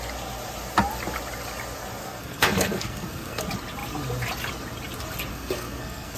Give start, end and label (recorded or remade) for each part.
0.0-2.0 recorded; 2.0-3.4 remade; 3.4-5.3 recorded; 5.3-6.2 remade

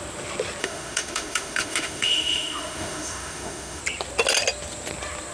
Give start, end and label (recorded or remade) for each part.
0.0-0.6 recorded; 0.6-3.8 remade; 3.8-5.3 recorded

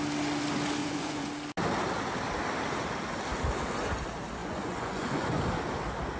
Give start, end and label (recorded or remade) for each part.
0.0-0.8 recorded; 0.8-1.3 remade; 1.3-4.4 recorded; 4.4-5.4 remade; 5.4-6.2 recorded

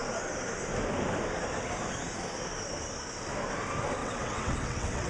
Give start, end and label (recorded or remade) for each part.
0.0-4.0 recorded; 4.0-5.1 remade

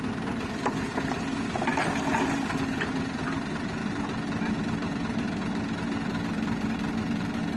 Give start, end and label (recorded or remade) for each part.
0.0-7.6 recorded

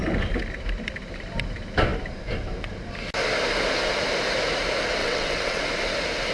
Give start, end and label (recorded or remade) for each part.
0.0-5.0 recorded; 5.0-5.6 remade; 5.6-6.3 recorded

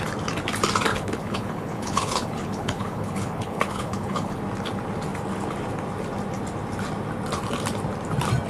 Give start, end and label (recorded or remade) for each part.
0.0-0.9 recorded; 0.9-4.4 remade; 4.4-8.5 recorded